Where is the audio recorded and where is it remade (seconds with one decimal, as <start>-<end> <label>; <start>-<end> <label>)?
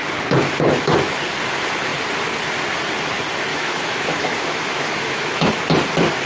0.0-3.5 recorded; 3.5-5.5 remade; 5.5-6.3 recorded